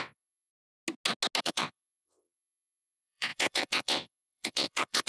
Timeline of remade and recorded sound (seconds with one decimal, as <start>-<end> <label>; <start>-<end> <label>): 0.0-0.5 remade; 0.5-1.4 recorded; 1.4-5.1 remade